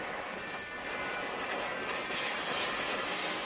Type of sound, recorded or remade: recorded